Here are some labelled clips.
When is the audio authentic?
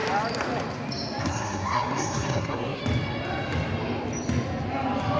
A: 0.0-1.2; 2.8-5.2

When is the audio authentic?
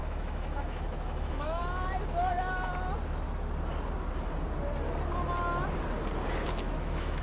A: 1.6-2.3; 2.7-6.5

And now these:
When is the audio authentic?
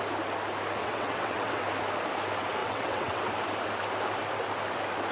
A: 0.0-0.8; 1.6-2.6; 3.2-5.1